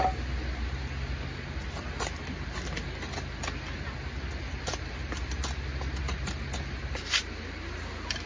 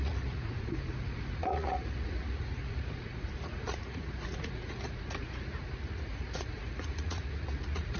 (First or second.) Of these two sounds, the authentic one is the first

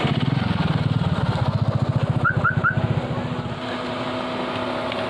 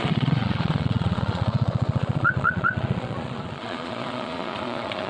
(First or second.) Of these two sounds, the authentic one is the first